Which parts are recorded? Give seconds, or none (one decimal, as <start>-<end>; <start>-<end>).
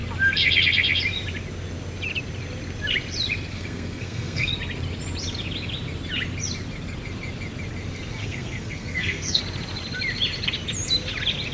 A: 0.0-3.5; 4.5-8.2; 9.4-11.5